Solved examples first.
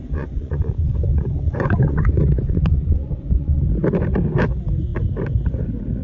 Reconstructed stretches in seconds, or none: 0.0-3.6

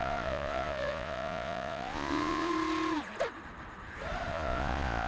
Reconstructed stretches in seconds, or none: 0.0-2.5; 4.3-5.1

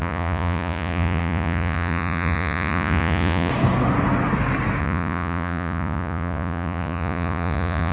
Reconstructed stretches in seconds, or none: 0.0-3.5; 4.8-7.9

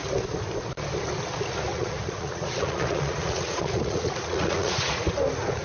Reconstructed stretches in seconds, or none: 1.7-5.1

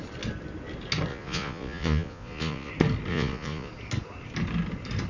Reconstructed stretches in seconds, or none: 1.1-2.7; 3.1-3.7